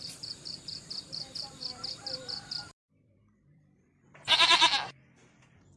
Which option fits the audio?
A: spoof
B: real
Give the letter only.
A